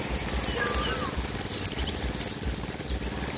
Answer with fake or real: real